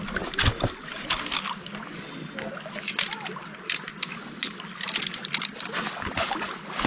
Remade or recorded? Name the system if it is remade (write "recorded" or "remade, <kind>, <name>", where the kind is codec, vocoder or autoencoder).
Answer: recorded